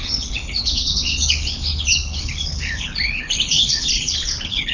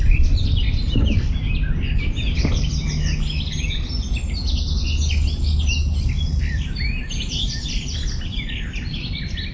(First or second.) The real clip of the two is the second